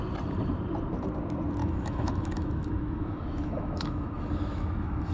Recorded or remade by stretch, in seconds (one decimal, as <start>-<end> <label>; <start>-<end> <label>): 0.0-1.6 recorded; 1.6-5.1 remade